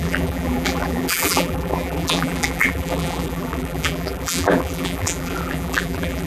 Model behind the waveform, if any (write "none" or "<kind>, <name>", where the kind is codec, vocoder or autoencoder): vocoder, BigVGAN v2